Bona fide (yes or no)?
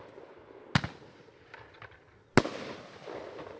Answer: yes